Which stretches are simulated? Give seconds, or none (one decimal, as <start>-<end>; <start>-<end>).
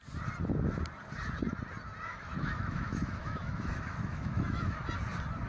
2.1-4.9